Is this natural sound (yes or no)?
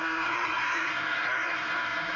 no